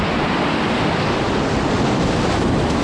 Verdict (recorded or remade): recorded